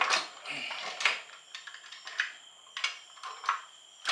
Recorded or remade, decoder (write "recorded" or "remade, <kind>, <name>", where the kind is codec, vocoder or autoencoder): recorded